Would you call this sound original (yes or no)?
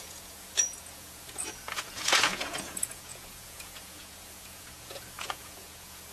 no